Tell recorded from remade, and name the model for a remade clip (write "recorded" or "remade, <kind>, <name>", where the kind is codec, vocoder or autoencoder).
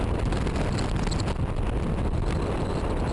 recorded